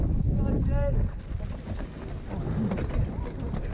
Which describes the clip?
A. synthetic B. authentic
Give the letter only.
B